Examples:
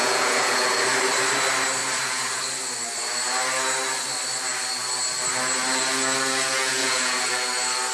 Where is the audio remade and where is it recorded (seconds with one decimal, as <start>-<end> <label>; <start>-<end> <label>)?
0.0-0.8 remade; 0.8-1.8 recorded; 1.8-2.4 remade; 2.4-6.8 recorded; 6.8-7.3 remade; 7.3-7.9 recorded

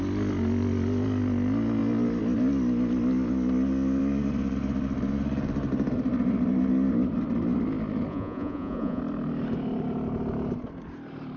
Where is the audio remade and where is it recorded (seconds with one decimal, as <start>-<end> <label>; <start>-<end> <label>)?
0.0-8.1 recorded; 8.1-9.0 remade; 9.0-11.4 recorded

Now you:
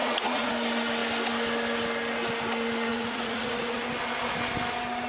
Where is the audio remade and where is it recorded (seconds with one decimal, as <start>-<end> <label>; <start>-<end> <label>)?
0.0-0.5 remade; 0.5-2.9 recorded; 2.9-3.8 remade; 3.8-5.1 recorded

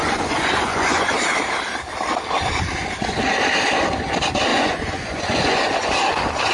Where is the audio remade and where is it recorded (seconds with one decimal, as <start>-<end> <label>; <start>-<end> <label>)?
0.0-1.1 remade; 1.1-2.8 recorded; 2.8-3.3 remade; 3.3-4.5 recorded; 4.5-5.9 remade; 5.9-6.5 recorded

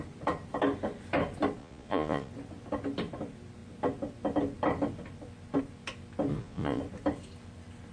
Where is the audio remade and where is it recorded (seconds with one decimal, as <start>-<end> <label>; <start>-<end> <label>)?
0.0-1.6 recorded; 1.6-2.3 remade; 2.3-6.3 recorded; 6.3-6.8 remade; 6.8-7.9 recorded

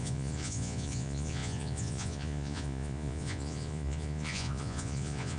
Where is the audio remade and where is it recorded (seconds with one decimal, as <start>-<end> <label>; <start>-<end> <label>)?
0.0-5.4 remade